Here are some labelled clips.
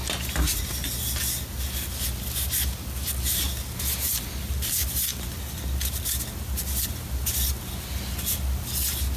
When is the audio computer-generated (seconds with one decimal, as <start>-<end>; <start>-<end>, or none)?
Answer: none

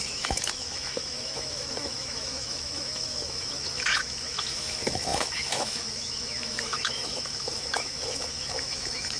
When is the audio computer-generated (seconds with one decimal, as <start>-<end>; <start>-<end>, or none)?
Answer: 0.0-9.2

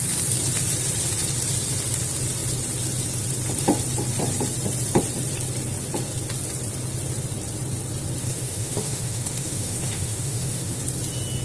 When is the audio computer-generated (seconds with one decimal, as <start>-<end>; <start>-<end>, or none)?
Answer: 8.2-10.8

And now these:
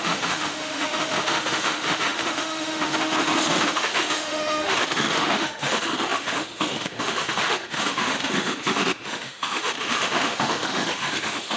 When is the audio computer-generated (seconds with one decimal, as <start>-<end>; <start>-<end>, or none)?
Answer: 0.0-11.6

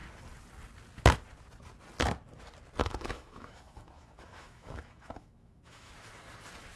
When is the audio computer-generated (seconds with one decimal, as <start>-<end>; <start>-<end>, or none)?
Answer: 2.8-5.9

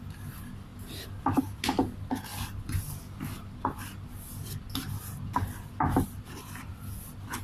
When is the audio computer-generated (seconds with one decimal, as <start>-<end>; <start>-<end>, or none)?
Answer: none